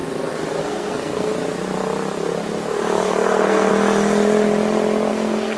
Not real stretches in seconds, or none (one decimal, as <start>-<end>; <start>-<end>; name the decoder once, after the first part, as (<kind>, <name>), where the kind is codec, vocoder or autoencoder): 0.6-1.3 (codec, SNAC); 3.0-3.7; 5.1-5.6